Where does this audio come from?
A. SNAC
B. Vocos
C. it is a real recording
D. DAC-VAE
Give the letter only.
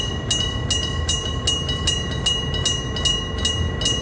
C